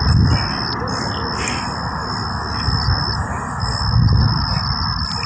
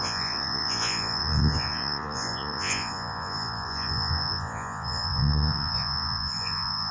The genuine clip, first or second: first